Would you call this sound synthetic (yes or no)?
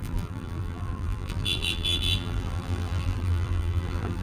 yes